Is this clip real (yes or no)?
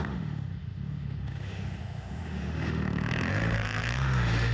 no